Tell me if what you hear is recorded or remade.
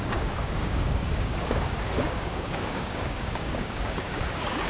remade